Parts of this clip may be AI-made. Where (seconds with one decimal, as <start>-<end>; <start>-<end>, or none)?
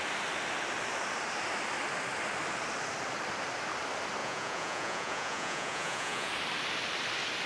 4.2-6.3